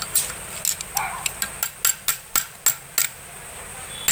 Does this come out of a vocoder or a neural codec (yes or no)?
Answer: no